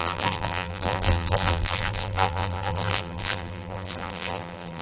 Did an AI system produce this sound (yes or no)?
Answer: yes